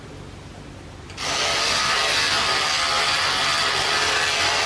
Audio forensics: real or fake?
real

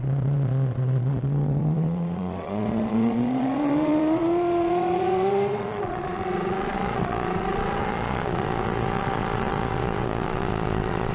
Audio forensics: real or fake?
fake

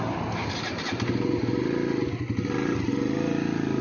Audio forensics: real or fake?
real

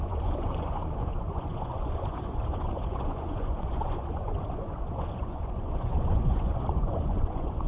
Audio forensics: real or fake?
fake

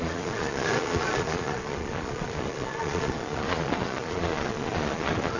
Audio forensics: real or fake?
fake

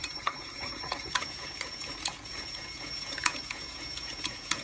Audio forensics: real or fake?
fake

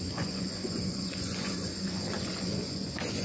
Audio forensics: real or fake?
fake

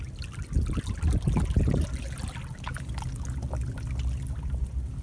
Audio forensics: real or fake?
real